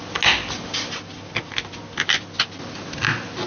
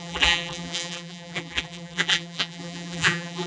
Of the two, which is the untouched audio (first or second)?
first